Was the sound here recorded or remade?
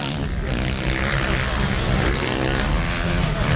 recorded